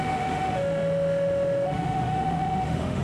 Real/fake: fake